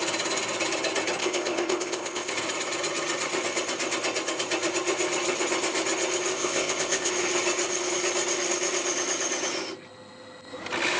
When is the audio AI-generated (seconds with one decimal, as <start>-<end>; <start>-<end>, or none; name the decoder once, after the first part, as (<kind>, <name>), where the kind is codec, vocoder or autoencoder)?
1.2-2.3 (codec, ZipCodec); 6.3-7.1